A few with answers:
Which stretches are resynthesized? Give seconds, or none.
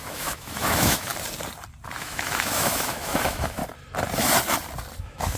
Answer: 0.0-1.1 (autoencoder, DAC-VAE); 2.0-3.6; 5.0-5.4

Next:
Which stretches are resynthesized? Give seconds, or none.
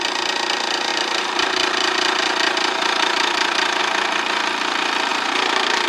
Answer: 0.9-3.8 (vocoder, BigVGAN v2); 5.1-5.9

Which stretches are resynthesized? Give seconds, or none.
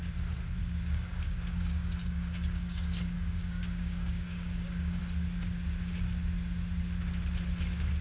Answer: 0.6-5.0 (codec, DAC)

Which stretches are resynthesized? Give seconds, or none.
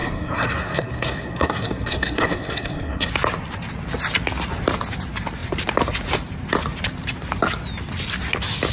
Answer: 0.0-3.1 (codec, SNAC)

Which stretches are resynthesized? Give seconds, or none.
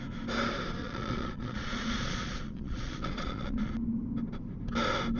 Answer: 0.8-3.7 (vocoder, Vocos)